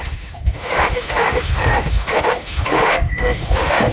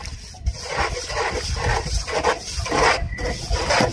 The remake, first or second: first